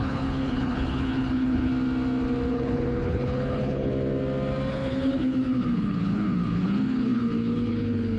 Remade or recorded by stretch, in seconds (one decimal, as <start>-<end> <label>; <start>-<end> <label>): 0.0-1.7 remade; 1.7-2.5 recorded; 2.5-3.9 remade; 3.9-4.7 recorded; 4.7-8.2 remade